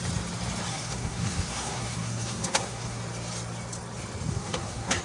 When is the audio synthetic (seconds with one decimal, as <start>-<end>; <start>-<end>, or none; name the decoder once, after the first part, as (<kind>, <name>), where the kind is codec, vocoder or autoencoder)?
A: 0.7-3.0 (codec, SNAC); 4.3-5.0

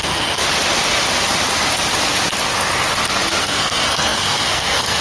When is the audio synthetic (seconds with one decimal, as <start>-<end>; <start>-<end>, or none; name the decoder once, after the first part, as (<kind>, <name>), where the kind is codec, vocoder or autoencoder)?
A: 0.0-0.4 (codec, SNAC); 3.4-5.0

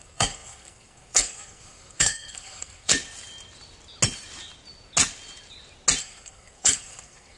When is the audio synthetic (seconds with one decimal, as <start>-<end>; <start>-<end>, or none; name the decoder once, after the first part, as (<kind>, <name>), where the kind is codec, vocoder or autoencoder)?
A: 0.0-2.9 (codec, SNAC); 6.0-7.4

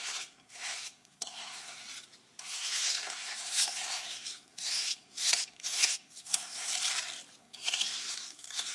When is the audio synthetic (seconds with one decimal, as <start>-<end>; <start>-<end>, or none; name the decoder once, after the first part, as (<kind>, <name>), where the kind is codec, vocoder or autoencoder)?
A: 0.0-1.8 (codec, SNAC); 2.4-6.7; 7.4-8.7

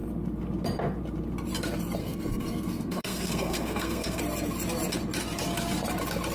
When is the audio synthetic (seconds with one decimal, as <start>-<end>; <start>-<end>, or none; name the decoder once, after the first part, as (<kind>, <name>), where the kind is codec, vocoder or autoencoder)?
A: 2.0-4.2 (codec, SNAC)